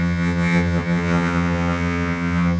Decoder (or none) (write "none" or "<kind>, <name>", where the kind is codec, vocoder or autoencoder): vocoder, HiFi-GAN